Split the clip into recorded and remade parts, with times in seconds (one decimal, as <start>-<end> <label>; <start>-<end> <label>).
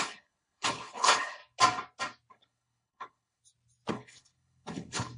0.0-1.4 remade; 1.4-2.3 recorded; 2.3-3.4 remade; 3.4-3.9 recorded; 3.9-5.2 remade